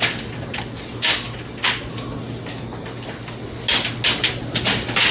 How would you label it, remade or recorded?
recorded